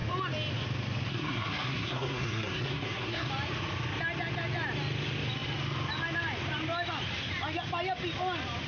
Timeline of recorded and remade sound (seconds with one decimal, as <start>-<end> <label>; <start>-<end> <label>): 0.0-1.1 recorded; 1.1-3.3 remade; 3.3-8.7 recorded